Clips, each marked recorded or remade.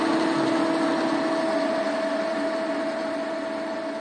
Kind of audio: recorded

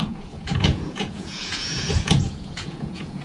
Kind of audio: remade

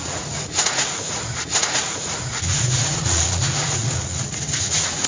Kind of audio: remade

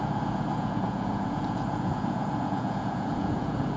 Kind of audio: remade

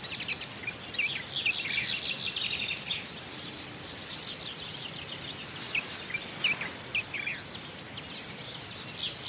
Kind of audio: recorded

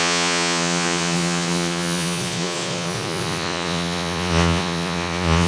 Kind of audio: remade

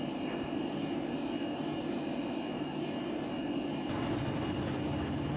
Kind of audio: recorded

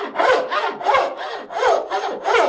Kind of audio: recorded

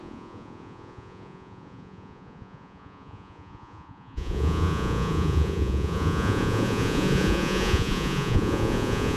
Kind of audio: remade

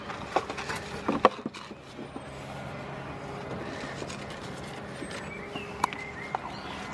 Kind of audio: recorded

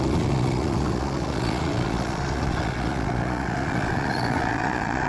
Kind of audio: remade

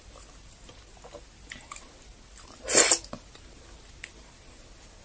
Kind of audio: recorded